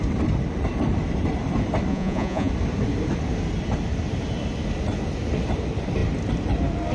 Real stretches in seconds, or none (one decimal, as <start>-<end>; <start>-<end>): 0.0-1.9; 2.5-6.9